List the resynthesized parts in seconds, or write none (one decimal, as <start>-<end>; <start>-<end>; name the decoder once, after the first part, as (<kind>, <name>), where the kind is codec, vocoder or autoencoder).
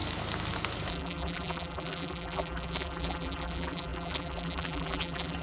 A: 0.9-5.4 (vocoder, BigVGAN v2)